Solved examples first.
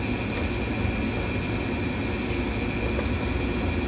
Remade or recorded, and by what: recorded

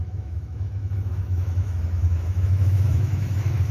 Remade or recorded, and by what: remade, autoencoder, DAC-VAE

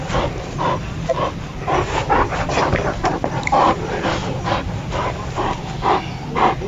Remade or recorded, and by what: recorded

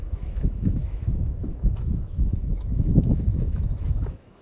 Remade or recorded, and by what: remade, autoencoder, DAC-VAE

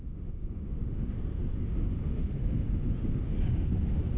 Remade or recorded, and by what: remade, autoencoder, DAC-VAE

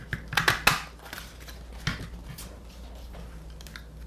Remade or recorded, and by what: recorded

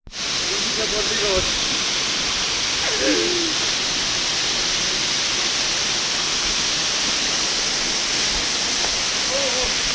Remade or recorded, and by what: recorded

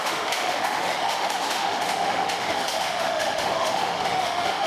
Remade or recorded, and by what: remade, autoencoder, DAC-VAE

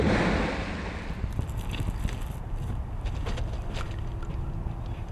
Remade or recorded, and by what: recorded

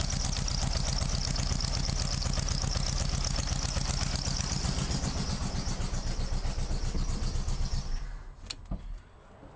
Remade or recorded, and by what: recorded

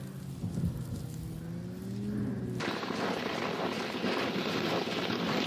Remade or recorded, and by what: recorded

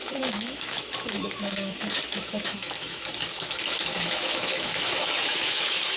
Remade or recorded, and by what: remade, autoencoder, DAC-VAE